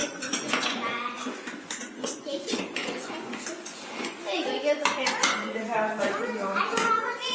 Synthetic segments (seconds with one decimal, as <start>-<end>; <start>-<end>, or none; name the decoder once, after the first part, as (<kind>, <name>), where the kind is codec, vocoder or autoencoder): 0.0-7.3 (vocoder, Vocos)